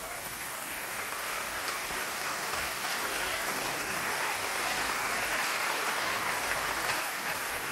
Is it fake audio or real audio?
fake